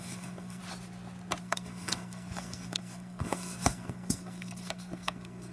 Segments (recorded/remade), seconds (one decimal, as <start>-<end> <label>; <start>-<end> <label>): 0.0-0.6 remade; 0.6-1.4 recorded; 1.4-5.5 remade